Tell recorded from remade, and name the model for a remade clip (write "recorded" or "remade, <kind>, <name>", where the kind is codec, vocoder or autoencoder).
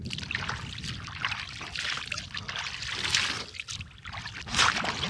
recorded